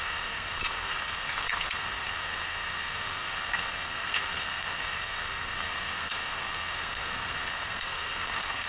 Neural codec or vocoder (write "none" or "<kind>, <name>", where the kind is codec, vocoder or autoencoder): codec, SNAC